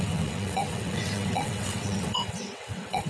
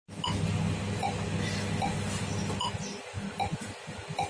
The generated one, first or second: first